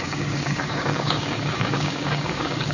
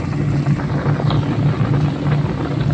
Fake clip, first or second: first